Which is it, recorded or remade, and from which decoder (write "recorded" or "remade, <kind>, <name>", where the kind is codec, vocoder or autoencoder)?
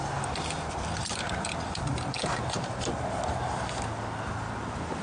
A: recorded